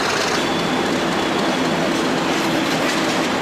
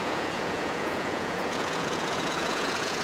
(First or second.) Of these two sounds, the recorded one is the first